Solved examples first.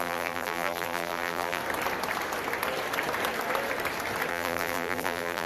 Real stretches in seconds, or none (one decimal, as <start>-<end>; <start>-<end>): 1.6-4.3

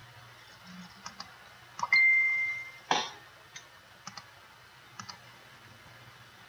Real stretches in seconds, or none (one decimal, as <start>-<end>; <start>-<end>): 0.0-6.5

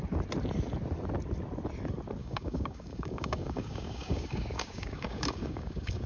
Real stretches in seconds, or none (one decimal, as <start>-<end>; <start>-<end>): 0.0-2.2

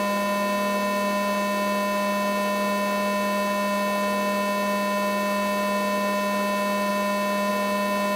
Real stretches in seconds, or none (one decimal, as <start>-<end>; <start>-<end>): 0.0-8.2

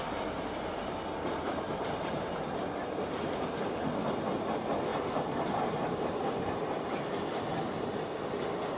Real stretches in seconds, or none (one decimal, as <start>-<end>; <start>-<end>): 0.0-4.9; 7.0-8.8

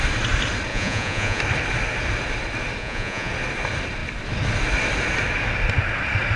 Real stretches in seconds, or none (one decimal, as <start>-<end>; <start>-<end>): 0.0-0.7; 1.4-2.8; 3.3-6.4